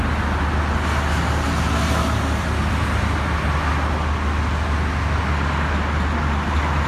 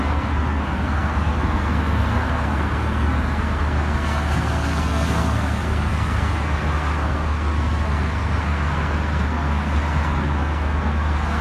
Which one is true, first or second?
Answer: first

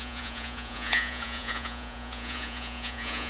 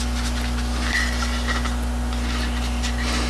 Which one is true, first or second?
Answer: second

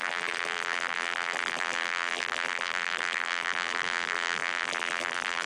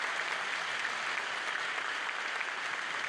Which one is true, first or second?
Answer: second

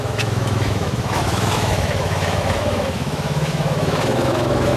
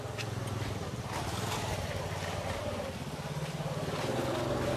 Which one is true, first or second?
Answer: second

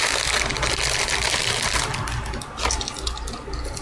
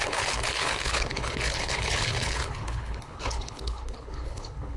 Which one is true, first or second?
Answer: first